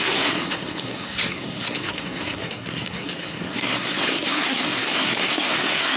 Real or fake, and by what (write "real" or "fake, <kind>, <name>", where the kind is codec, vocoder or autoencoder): fake, codec, SNAC